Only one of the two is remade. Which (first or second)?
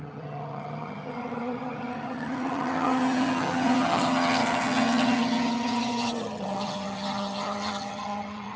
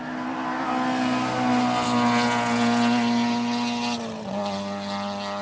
first